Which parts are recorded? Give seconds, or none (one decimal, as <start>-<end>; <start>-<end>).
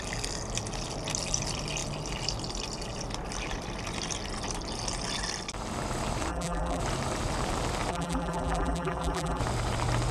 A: 0.0-6.3; 6.8-7.9; 9.4-10.1